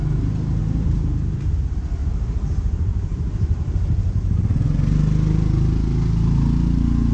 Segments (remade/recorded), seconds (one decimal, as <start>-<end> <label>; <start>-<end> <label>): 0.0-0.6 recorded; 0.6-1.4 remade; 1.4-2.0 recorded; 2.0-4.3 remade; 4.3-7.1 recorded